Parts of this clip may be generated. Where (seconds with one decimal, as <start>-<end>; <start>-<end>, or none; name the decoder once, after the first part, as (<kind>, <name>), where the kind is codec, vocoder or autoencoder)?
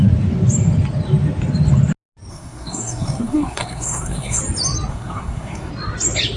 2.3-4.4 (codec, SNAC); 4.9-5.7